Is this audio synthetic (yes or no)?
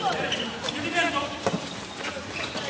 no